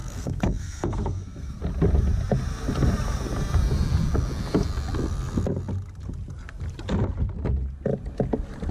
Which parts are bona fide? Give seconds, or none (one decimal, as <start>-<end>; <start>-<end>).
1.6-8.7